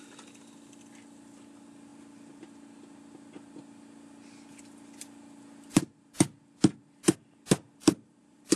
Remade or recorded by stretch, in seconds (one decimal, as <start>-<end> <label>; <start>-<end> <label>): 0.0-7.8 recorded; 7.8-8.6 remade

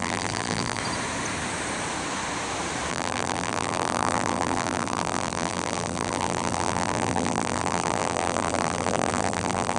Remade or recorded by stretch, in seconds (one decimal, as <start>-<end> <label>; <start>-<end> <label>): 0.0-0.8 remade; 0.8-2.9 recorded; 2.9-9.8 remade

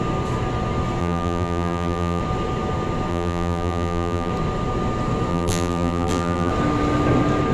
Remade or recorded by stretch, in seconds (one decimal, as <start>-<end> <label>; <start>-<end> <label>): 0.0-1.0 recorded; 1.0-2.2 remade; 2.2-3.1 recorded; 3.1-4.3 remade; 4.3-5.3 recorded; 5.3-6.5 remade; 6.5-7.5 recorded

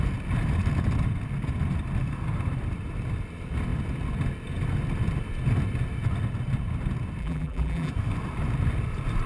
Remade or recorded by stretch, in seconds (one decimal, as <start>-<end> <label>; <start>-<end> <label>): 0.0-7.2 recorded; 7.2-7.9 remade; 7.9-9.3 recorded